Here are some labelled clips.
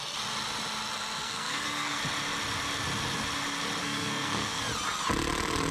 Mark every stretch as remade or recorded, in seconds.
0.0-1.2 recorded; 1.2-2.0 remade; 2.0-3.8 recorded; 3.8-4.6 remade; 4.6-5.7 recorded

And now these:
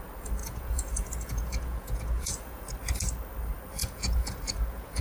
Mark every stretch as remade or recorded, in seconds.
0.0-0.4 recorded; 0.4-2.7 remade; 2.7-3.8 recorded; 3.8-5.0 remade

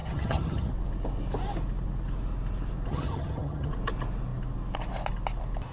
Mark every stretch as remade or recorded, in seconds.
0.0-0.7 remade; 0.7-2.9 recorded; 2.9-3.7 remade; 3.7-5.7 recorded

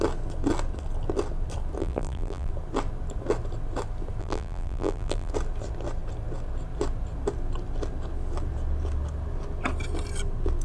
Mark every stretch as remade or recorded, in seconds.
0.0-1.8 recorded; 1.8-2.5 remade; 2.5-4.2 recorded; 4.2-5.3 remade; 5.3-10.6 recorded